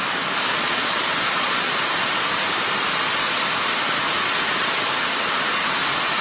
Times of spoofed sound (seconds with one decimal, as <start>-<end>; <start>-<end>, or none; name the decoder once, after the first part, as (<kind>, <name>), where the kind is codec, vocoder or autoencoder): 0.5-1.7 (vocoder, Vocos)